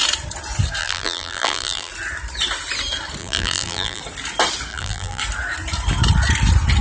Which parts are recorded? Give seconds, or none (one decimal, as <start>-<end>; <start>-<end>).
0.0-0.8; 1.9-3.2; 4.0-4.7; 5.2-6.8